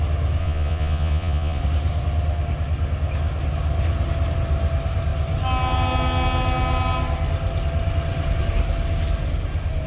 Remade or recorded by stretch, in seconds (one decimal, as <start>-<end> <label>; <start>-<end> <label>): 0.0-0.4 recorded; 0.4-1.6 remade; 1.6-9.9 recorded